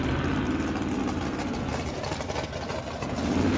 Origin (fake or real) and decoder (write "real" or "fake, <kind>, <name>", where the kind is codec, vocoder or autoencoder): real